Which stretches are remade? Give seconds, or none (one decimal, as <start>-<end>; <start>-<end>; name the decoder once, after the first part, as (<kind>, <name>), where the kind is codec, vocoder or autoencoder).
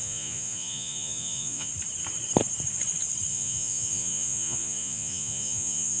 0.0-1.7 (vocoder, Vocos); 3.3-6.0